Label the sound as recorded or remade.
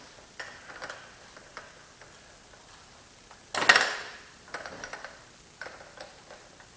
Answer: recorded